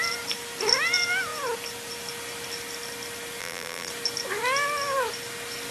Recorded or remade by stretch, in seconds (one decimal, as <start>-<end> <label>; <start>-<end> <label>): 0.0-3.4 recorded; 3.4-3.9 remade; 3.9-5.7 recorded